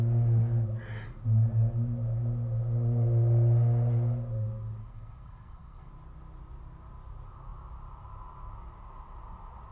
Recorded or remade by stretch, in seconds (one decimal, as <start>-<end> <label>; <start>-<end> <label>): 0.0-4.8 recorded; 4.8-5.9 remade; 5.9-9.7 recorded

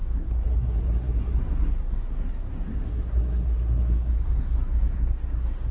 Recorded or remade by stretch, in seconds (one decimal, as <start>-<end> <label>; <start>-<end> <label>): 0.0-5.7 remade

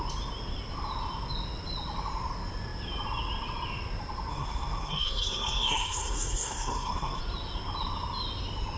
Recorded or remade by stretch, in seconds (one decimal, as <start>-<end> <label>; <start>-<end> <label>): 0.0-4.3 recorded; 4.3-7.2 remade; 7.2-8.8 recorded

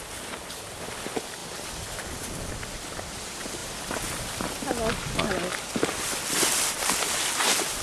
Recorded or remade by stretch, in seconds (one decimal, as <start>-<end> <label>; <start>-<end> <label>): 0.0-7.8 recorded

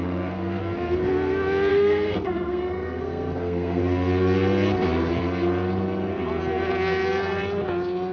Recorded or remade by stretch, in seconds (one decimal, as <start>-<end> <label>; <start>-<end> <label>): 0.0-0.6 remade; 0.6-1.7 recorded; 1.7-3.8 remade; 3.8-8.1 recorded